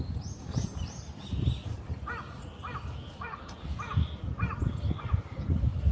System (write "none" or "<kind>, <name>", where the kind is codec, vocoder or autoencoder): vocoder, BigVGAN v2